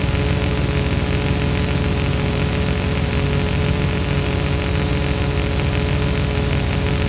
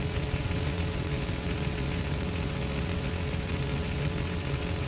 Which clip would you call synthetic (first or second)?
second